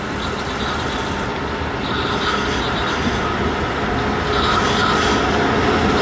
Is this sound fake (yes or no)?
no